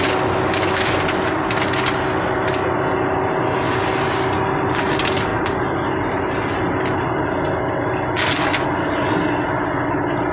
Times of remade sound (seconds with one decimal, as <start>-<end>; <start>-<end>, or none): none